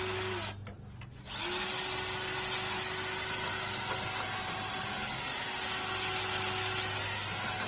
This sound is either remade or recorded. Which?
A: recorded